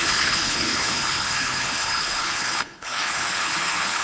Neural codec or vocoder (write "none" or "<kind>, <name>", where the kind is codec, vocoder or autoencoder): codec, HILCodec